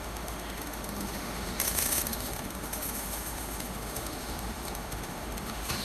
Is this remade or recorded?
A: remade